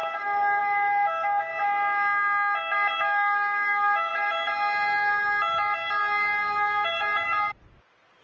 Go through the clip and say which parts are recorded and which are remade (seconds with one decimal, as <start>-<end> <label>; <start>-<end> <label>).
0.0-1.5 remade; 1.5-3.0 recorded; 3.0-4.1 remade; 4.1-8.2 recorded